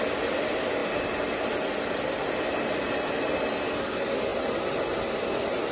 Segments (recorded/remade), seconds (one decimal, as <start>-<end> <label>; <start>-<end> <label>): 0.0-5.7 recorded